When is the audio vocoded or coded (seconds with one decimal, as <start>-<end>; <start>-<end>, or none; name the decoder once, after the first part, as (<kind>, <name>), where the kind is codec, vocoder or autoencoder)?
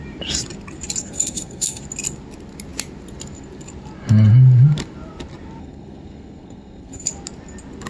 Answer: 1.0-1.8 (codec, SNAC); 5.6-7.1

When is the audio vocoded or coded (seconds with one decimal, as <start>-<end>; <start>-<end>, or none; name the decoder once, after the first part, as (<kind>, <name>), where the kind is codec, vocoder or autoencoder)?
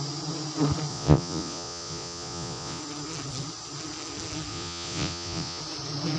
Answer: 0.9-2.8 (vocoder, Vocos); 4.5-5.6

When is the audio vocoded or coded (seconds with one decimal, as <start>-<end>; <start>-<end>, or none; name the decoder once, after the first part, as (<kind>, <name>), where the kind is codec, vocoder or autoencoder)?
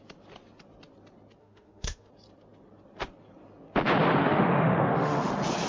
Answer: 1.4-2.1 (autoencoder, DAC-VAE); 4.2-5.3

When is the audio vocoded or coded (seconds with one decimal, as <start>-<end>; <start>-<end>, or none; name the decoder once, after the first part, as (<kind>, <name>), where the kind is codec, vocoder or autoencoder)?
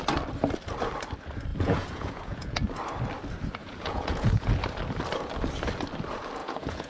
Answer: 1.5-2.6 (vocoder, Vocos); 3.6-4.5; 6.4-6.9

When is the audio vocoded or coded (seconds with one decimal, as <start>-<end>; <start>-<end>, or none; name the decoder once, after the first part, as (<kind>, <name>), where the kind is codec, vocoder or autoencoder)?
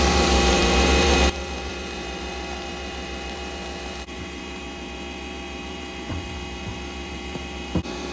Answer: 0.0-8.1 (vocoder, BigVGAN v2)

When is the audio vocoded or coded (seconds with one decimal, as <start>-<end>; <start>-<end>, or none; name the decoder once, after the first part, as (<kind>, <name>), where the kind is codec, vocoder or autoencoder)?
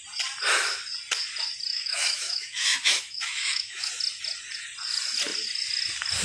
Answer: 1.7-3.9 (autoencoder, DAC-VAE)